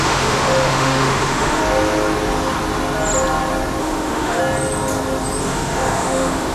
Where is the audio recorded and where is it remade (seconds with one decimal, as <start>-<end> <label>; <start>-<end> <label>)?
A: 0.0-1.6 remade; 1.6-3.8 recorded; 3.8-4.4 remade; 4.4-5.4 recorded; 5.4-6.5 remade